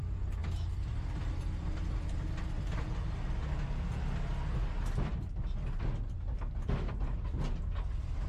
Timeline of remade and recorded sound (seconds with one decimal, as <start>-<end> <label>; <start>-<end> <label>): 0.0-8.3 recorded